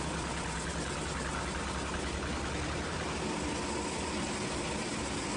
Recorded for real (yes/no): yes